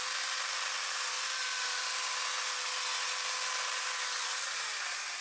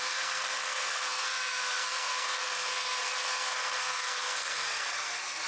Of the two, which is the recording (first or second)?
first